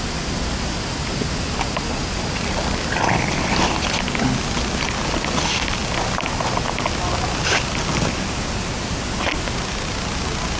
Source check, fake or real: real